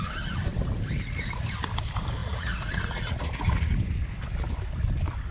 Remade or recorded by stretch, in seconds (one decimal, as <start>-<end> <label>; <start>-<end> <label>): 0.0-2.2 recorded; 2.2-3.7 remade; 3.7-5.3 recorded